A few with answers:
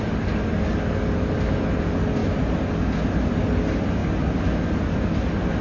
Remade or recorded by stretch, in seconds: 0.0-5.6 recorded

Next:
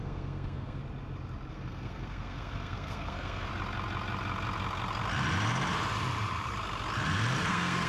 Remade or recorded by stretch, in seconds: 0.0-0.8 remade; 0.8-1.5 recorded; 1.5-3.5 remade; 3.5-7.5 recorded; 7.5-7.9 remade

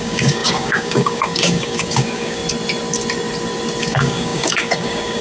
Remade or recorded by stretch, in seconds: 0.0-2.4 remade; 2.4-3.8 recorded; 3.8-5.2 remade

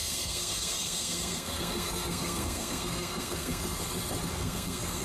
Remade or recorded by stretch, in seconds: 0.0-3.6 remade; 3.6-4.3 recorded; 4.3-5.0 remade

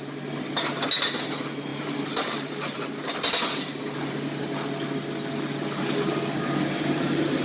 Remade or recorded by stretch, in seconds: 0.0-1.7 recorded; 1.7-2.9 remade; 2.9-7.4 recorded

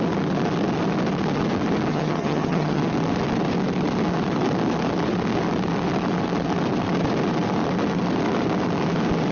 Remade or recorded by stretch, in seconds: 0.0-1.9 recorded; 1.9-2.8 remade; 2.8-9.3 recorded